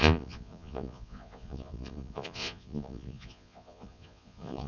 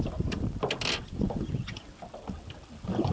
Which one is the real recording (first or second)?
second